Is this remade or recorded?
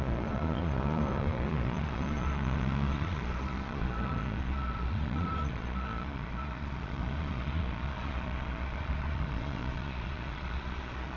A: remade